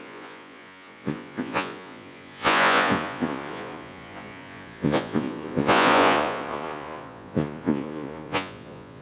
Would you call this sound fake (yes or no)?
yes